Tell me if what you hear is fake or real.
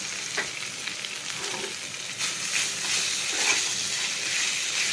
real